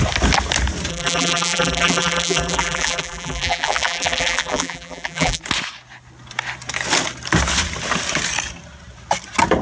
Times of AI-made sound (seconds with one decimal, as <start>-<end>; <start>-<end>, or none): 0.9-5.4